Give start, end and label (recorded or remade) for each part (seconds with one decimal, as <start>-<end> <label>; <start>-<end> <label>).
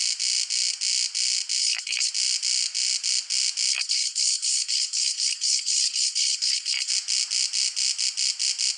0.0-1.6 recorded; 1.6-2.1 remade; 2.1-3.7 recorded; 3.7-6.9 remade; 6.9-8.8 recorded